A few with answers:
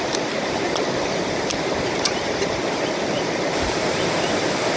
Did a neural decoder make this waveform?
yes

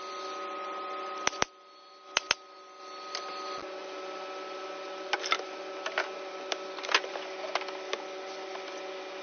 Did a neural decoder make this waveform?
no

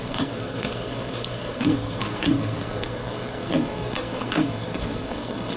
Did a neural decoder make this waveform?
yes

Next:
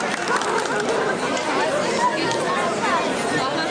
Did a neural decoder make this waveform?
no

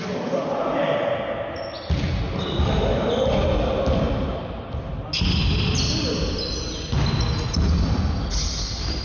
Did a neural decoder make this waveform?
no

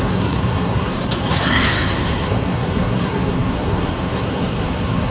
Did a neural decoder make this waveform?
yes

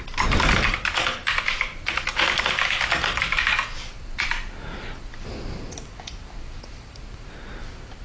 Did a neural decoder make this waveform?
no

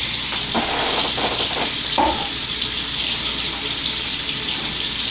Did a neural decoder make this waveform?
yes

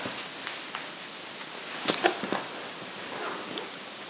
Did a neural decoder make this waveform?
no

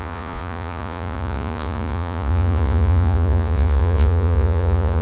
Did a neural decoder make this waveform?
yes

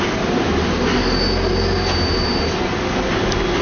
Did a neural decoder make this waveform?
no